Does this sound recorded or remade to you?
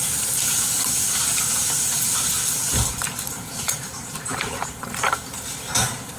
remade